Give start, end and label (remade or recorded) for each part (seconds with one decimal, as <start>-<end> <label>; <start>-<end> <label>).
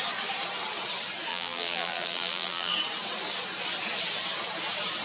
0.0-1.3 recorded; 1.3-2.7 remade; 2.7-5.0 recorded